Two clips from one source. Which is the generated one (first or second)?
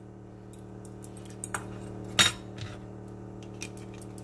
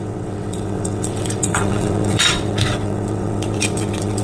second